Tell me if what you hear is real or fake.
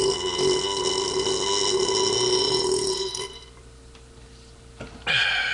real